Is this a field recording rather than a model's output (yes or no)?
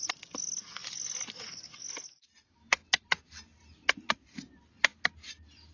yes